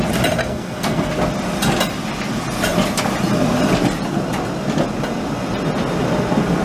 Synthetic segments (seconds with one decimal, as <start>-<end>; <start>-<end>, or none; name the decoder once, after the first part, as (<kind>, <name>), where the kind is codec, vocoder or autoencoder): 0.4-1.1 (codec, SNAC)